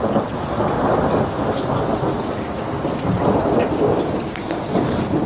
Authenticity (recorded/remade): recorded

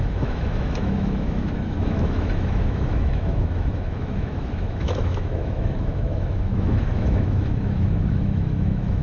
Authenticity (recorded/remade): remade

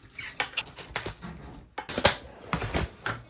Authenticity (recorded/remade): recorded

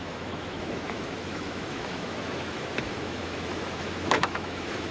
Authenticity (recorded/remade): remade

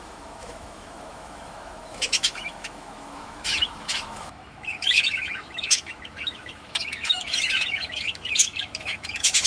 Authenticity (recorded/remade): remade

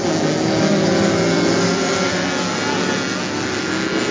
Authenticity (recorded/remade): recorded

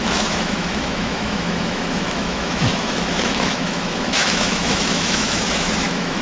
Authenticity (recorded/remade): remade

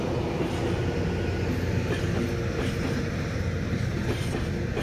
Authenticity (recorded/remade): recorded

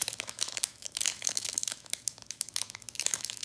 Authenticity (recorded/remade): remade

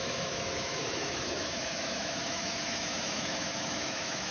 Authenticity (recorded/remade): remade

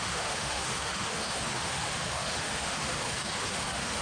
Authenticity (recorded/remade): remade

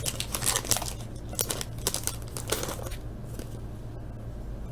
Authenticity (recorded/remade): recorded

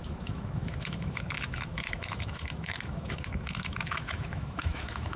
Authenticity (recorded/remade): remade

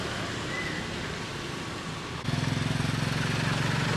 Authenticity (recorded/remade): recorded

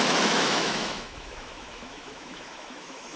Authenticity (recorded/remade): remade